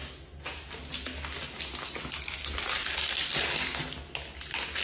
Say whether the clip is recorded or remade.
recorded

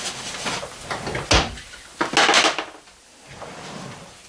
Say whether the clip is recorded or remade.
recorded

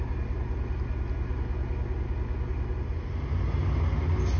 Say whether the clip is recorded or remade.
recorded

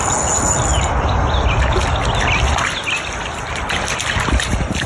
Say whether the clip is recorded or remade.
recorded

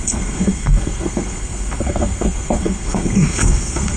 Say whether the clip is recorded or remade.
remade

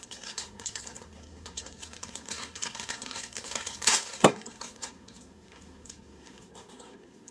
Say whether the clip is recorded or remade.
remade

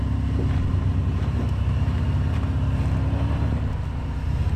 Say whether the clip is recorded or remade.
recorded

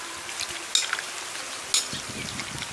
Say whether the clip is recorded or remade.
recorded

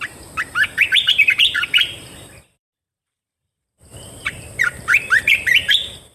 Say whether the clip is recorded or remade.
remade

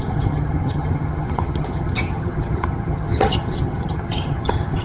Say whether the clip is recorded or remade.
remade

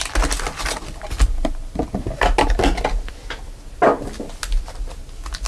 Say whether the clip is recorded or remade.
recorded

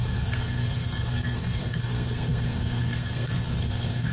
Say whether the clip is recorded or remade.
remade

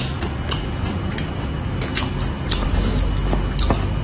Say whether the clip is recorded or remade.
recorded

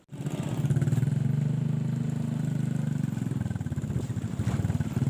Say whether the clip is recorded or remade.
recorded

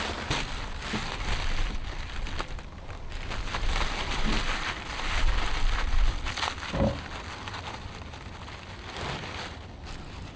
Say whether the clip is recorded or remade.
recorded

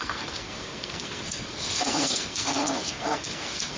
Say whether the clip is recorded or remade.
remade